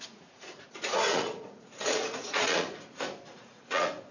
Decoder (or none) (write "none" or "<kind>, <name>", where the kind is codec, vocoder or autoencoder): vocoder, Vocos